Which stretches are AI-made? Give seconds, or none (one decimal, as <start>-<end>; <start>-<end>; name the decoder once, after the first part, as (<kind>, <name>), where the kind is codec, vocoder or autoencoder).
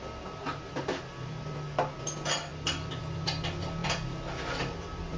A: none